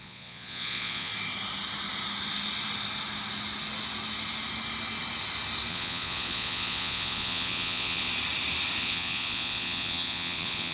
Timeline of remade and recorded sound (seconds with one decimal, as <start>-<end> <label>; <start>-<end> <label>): 0.0-1.1 remade; 1.1-5.7 recorded; 5.7-8.1 remade; 8.1-8.8 recorded; 8.8-10.7 remade

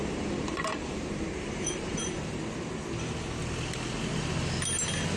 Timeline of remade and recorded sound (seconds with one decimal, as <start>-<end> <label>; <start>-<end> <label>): 0.0-2.4 remade; 2.4-5.2 recorded

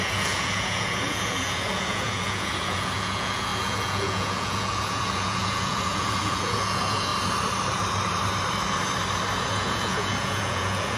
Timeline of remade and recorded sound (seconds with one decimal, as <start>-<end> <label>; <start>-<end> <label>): 0.0-7.1 remade; 7.1-9.4 recorded; 9.4-11.0 remade

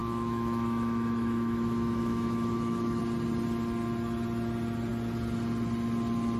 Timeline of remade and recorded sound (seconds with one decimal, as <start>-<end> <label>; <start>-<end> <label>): 0.0-3.0 remade; 3.0-6.4 recorded

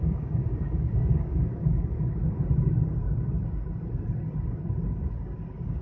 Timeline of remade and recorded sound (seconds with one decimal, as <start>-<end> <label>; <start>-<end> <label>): 0.0-2.1 remade; 2.1-5.8 recorded